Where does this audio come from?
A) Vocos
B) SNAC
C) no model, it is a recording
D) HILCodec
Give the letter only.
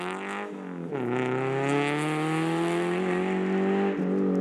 C